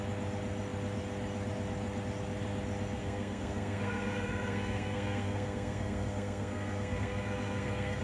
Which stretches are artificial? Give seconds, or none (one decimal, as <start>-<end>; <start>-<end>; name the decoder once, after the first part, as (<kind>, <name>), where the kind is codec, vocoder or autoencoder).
3.0-8.0 (codec, SNAC)